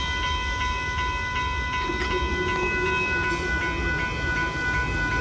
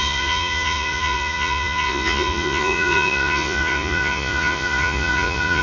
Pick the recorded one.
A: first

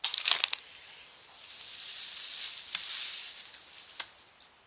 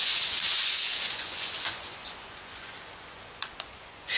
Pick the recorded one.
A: first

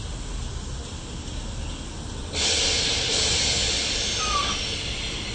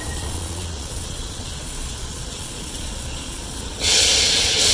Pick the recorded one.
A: first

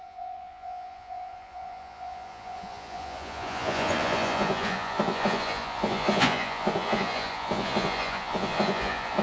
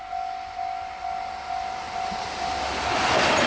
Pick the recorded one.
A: second